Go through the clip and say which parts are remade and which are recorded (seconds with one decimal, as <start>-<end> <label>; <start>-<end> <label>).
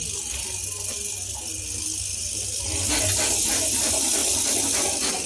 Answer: 0.0-2.1 recorded; 2.1-2.6 remade; 2.6-5.3 recorded